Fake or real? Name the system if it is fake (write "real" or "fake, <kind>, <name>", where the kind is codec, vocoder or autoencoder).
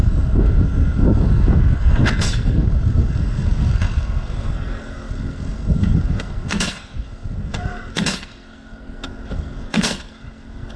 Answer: fake, codec, SNAC